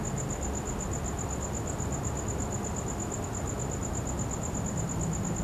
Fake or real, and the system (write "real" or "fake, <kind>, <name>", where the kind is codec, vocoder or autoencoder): real